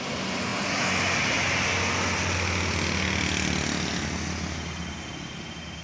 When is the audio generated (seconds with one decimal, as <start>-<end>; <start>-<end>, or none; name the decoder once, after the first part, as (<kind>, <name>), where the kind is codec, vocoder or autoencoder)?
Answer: none